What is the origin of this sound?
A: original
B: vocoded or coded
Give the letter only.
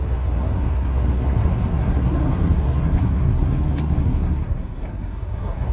B